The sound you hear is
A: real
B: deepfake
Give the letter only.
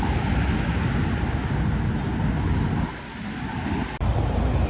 A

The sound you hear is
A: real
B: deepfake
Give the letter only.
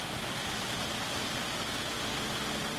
B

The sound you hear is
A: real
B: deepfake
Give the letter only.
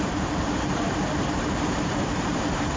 B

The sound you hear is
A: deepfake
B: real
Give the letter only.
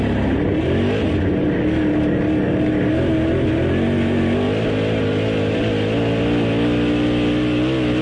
B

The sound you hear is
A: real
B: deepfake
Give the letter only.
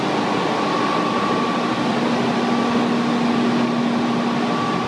A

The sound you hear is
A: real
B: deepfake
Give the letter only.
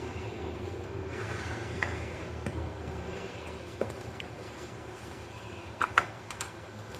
B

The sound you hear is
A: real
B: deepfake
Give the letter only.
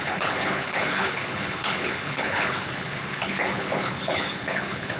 B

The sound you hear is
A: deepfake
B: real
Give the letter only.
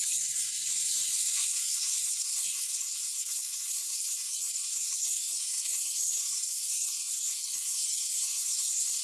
A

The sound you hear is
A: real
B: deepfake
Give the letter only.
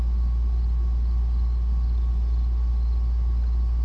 A